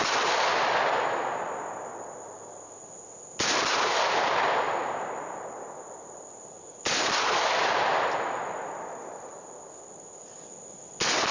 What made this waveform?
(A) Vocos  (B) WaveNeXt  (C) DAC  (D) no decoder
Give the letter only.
D